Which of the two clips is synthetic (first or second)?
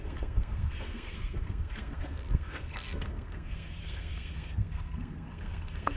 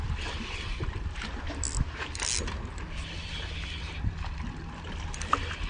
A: first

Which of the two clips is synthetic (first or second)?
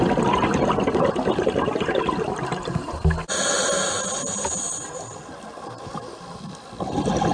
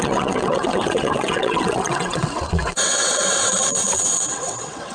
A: second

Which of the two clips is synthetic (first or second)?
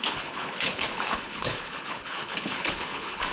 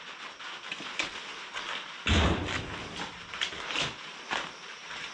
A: first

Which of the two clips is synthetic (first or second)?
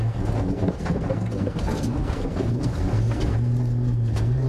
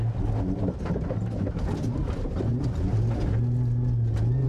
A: first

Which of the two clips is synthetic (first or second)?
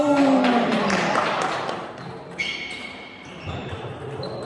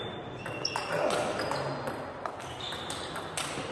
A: first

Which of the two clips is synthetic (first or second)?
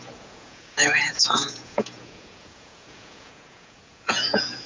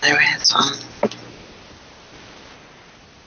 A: first